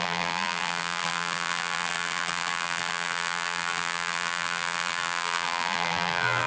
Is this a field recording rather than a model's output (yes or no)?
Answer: no